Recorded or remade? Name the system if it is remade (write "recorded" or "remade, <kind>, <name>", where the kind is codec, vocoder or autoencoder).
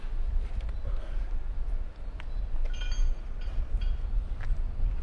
recorded